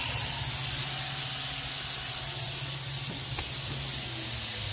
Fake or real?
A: real